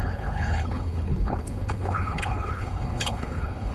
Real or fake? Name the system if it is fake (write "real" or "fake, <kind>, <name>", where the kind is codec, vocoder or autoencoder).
fake, codec, HILCodec